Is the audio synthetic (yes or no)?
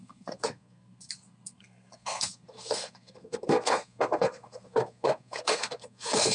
yes